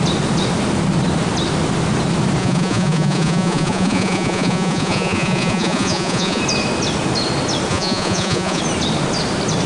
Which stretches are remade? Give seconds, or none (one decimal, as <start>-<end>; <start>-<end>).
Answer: 2.4-6.4; 7.7-8.6